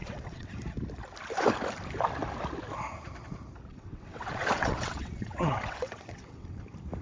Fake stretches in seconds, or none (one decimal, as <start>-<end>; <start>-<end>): 0.0-0.5; 3.7-6.6

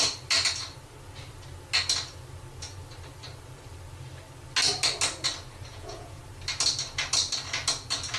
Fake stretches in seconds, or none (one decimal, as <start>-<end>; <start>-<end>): 5.7-6.2

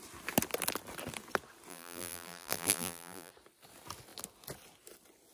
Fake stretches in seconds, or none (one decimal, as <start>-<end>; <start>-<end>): 1.7-3.3

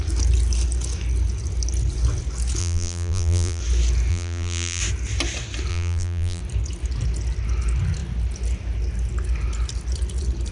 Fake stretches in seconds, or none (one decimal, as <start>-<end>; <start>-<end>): 2.6-3.6; 4.1-4.8; 5.7-6.4